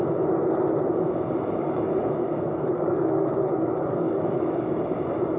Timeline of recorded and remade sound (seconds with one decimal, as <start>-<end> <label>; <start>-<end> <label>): 0.0-1.6 recorded; 1.6-4.8 remade; 4.8-5.4 recorded